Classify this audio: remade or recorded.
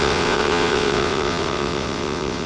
remade